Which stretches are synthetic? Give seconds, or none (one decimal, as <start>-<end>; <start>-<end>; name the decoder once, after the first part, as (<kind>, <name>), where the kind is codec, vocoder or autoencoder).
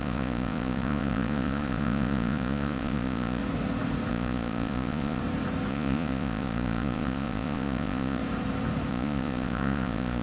0.0-3.4 (vocoder, Vocos); 4.1-5.2; 5.7-8.2; 8.9-10.2